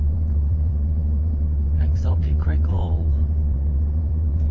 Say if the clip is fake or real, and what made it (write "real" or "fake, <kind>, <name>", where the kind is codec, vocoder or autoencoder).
fake, vocoder, WaveNeXt